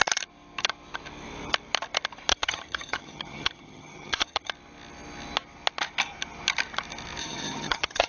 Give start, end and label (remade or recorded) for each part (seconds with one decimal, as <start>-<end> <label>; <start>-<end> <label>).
0.0-2.3 recorded; 2.3-4.5 remade; 4.5-7.2 recorded; 7.2-8.1 remade